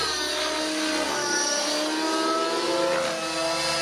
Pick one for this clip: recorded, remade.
recorded